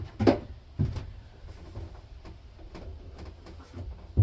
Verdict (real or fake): real